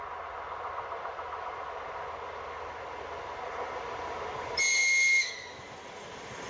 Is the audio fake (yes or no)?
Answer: no